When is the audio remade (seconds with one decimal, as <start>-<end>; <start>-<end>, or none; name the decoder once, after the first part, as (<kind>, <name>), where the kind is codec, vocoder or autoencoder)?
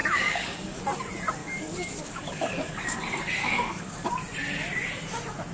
0.0-0.8 (codec, DAC); 1.4-3.0; 3.4-4.1